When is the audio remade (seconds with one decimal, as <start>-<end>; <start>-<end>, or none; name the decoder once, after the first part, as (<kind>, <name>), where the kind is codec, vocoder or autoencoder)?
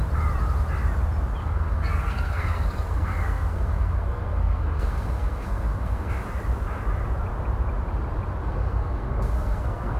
1.4-6.1 (codec, SNAC); 8.4-10.0